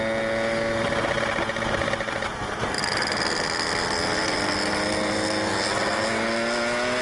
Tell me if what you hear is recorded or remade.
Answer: recorded